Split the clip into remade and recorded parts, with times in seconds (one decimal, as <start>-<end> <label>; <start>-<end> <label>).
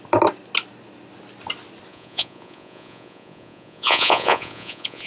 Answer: 0.0-1.9 recorded; 1.9-5.1 remade